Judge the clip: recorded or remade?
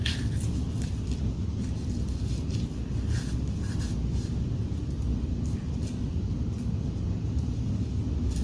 recorded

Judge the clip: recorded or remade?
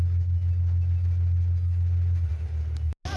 recorded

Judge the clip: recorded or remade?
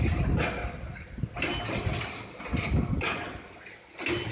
recorded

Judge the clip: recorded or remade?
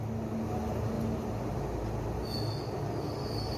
recorded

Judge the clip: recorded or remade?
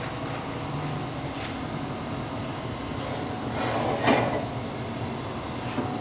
recorded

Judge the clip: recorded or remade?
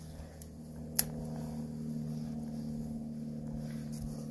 recorded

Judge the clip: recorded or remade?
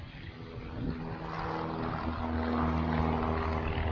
recorded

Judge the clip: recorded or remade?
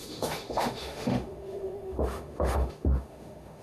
remade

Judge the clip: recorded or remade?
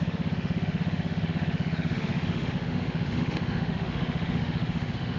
remade